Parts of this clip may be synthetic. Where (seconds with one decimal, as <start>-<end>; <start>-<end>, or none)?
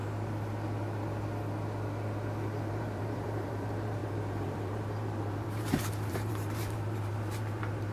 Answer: 2.6-7.9